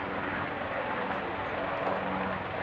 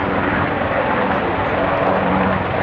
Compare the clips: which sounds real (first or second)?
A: first